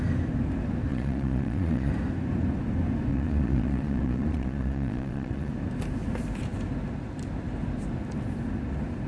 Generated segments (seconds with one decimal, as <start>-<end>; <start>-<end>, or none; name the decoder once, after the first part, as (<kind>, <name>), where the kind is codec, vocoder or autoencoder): 0.9-1.9 (vocoder, Vocos); 3.1-5.5